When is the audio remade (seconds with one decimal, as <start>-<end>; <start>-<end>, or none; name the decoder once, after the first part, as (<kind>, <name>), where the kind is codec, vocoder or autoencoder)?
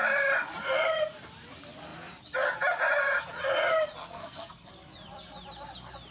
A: 4.0-4.7 (codec, SNAC)